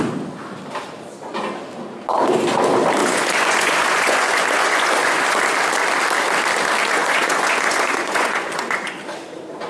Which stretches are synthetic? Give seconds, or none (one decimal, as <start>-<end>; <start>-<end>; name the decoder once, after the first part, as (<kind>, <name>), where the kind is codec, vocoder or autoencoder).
3.0-5.4 (vocoder, Vocos); 6.8-9.0